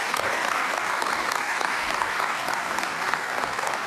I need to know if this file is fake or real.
fake